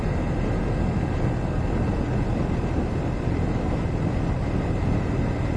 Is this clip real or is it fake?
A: real